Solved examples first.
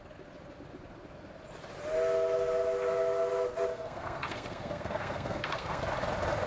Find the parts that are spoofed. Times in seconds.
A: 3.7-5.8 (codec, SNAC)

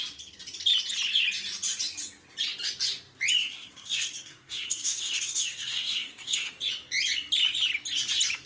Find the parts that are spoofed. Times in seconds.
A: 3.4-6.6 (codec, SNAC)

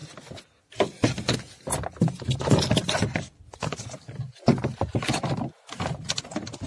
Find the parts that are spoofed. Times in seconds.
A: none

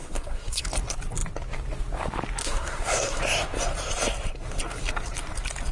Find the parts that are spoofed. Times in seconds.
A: 0.0-0.6 (codec, SNAC); 2.4-3.2

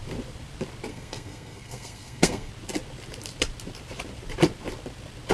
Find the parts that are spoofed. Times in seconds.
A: 0.9-2.5 (codec, SNAC)

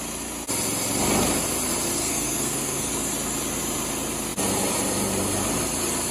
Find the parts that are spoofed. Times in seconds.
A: 2.0-2.9 (codec, SNAC)

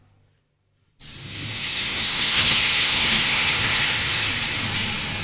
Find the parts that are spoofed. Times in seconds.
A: 1.2-4.3 (codec, SNAC)